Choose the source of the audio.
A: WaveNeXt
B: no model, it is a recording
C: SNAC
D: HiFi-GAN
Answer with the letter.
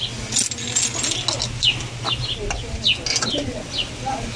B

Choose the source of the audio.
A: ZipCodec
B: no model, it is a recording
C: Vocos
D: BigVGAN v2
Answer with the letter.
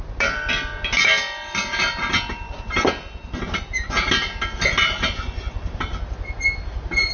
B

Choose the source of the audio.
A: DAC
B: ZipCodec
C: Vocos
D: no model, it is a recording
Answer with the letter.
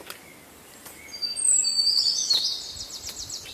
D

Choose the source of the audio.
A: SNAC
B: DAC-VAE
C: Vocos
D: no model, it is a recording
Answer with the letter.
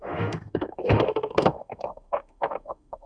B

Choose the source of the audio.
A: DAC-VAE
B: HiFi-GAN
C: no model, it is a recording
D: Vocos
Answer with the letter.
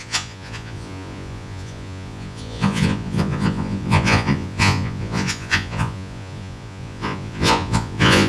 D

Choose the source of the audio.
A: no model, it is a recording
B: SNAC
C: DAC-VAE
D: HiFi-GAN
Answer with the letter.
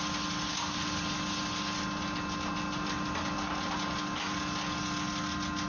A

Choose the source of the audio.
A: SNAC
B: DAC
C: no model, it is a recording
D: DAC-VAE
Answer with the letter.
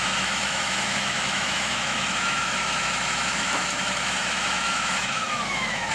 D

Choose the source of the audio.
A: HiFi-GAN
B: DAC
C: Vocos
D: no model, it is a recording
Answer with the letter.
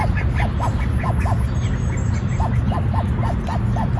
D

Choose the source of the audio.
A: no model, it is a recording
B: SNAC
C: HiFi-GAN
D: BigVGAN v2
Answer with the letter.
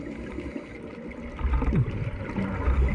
A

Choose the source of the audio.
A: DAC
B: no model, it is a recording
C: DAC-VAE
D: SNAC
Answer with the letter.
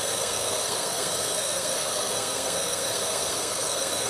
D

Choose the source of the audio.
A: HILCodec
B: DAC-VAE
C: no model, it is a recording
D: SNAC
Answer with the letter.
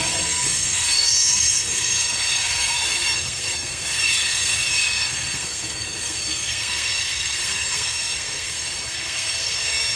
D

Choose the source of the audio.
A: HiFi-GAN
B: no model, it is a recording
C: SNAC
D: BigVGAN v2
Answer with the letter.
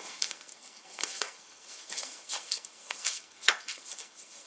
C